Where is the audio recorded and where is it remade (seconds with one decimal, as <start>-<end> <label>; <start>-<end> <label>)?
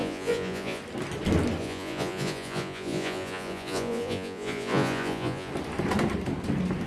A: 0.0-0.8 remade; 0.8-1.6 recorded; 1.6-5.5 remade; 5.5-6.9 recorded